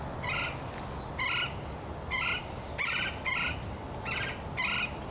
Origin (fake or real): real